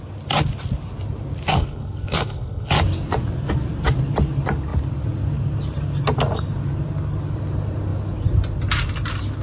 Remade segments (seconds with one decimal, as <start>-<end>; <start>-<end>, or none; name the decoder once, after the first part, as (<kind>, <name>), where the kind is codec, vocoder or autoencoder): 1.5-2.7 (codec, SNAC)